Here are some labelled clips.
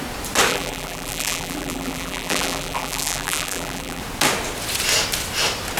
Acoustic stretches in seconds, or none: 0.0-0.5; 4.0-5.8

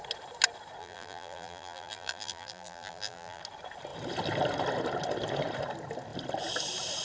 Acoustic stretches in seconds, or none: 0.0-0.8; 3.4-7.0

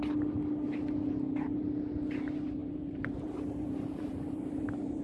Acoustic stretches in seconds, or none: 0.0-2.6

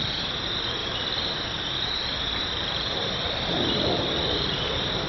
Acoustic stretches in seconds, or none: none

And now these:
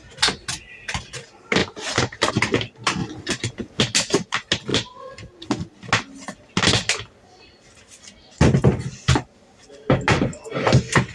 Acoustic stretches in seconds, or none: 0.0-11.1